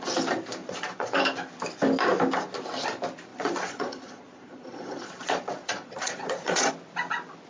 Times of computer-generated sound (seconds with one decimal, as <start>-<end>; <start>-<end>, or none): 0.6-1.2; 3.3-6.7